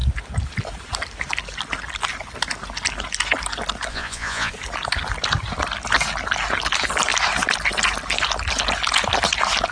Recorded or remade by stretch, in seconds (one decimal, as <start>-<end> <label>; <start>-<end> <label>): 0.0-3.9 recorded; 3.9-4.5 remade; 4.5-9.7 recorded